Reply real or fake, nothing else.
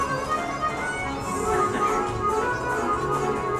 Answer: real